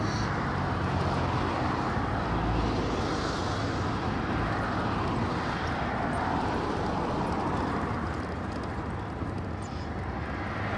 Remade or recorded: recorded